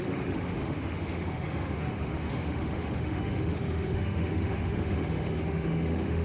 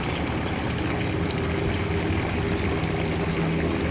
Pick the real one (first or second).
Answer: second